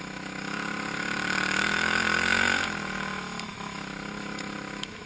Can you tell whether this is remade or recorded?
remade